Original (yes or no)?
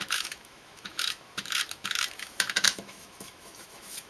no